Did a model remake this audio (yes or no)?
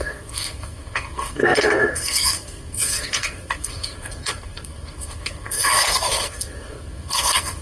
yes